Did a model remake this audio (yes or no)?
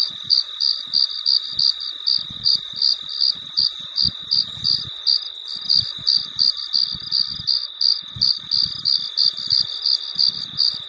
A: no